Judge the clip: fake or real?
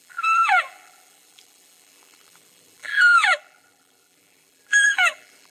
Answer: fake